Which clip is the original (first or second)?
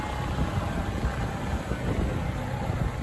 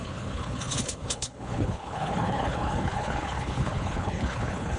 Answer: first